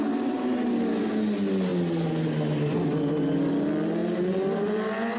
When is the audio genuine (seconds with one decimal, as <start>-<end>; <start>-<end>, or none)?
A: 0.0-5.2